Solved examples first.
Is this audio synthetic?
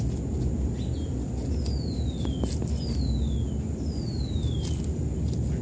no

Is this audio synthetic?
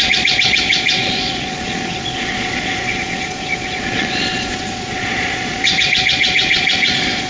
yes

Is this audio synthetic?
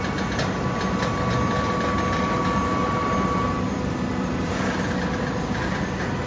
no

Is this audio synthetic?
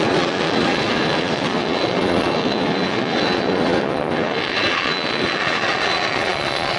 yes